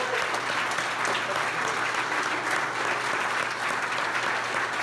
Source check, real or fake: real